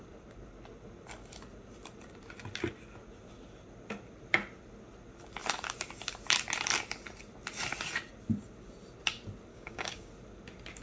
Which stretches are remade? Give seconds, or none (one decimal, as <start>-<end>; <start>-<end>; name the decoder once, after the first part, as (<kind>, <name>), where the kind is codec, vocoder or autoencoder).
9.5-10.1 (codec, DAC)